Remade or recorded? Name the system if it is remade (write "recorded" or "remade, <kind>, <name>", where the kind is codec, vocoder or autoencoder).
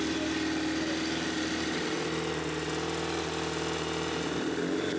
recorded